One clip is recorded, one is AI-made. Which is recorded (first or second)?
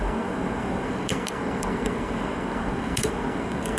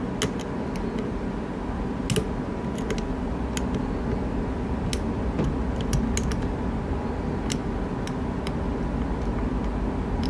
second